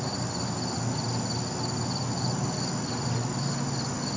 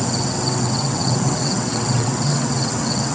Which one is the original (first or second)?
first